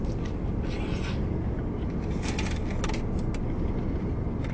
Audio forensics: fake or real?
real